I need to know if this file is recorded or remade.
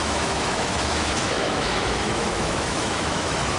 remade